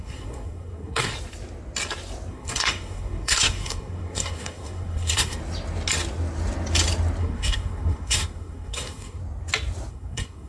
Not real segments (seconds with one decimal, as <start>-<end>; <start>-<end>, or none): 0.0-1.1; 2.3-5.4; 7.2-9.2; 9.9-10.5